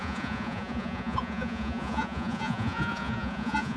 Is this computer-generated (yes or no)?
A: yes